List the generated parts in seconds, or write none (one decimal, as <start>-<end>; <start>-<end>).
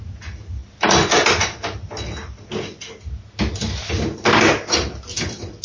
none